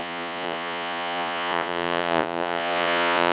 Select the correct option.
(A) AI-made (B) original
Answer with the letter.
A